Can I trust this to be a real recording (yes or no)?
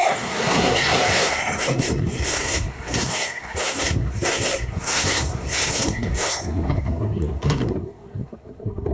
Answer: no